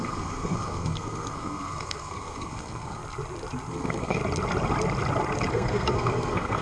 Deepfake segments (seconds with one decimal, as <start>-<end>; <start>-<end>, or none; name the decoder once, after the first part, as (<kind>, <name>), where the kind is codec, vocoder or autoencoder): 0.0-3.0 (codec, SNAC); 3.7-4.2; 5.5-6.6